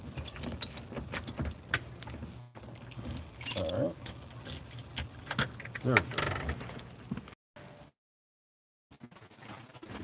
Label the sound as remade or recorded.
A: recorded